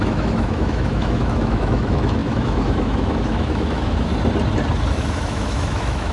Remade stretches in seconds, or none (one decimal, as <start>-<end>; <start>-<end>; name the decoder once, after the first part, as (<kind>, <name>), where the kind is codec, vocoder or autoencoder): 0.0-4.1 (autoencoder, DAC-VAE); 4.9-6.1